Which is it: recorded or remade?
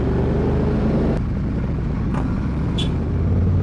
recorded